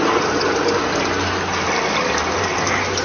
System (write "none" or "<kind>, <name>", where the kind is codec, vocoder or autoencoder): none